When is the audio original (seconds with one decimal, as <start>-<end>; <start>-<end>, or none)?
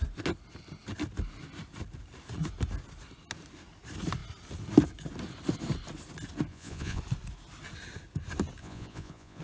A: 0.0-6.5; 7.0-8.6